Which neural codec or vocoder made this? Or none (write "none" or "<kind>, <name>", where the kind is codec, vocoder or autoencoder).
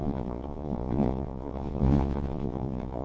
vocoder, Vocos